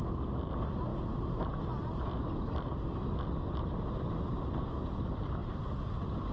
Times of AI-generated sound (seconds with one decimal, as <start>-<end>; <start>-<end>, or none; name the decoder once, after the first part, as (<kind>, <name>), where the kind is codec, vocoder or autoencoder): none